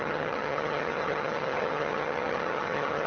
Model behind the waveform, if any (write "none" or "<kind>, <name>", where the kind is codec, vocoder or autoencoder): vocoder, HiFi-GAN